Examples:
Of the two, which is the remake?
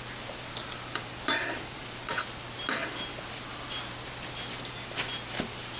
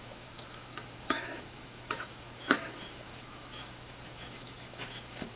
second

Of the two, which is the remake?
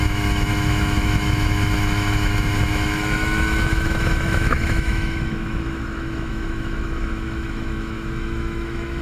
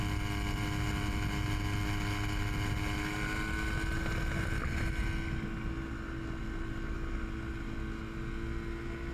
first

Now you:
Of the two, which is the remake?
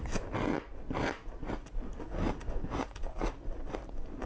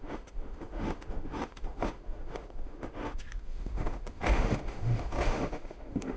second